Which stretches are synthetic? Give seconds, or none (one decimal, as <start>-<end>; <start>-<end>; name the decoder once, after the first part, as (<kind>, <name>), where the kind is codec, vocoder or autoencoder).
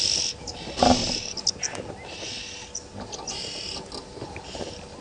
none